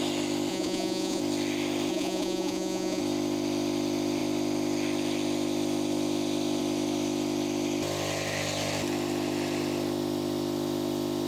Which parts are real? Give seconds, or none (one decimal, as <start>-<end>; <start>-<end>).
0.0-0.5; 1.2-1.9; 3.0-11.3